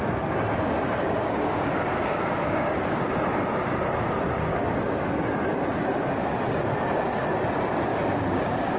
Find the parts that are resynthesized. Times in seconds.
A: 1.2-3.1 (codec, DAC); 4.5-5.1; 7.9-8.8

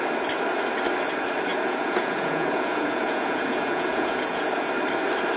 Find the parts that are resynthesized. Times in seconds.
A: 1.5-4.7 (vocoder, Vocos)

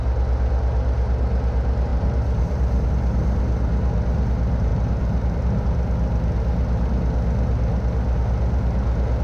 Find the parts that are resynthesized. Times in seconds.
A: 1.9-2.9 (vocoder, BigVGAN v2); 4.7-5.4